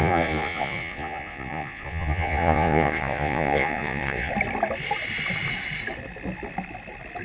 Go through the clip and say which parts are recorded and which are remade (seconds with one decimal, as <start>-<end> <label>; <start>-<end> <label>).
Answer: 0.0-4.3 remade; 4.3-7.2 recorded